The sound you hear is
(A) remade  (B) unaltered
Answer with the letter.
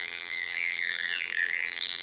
A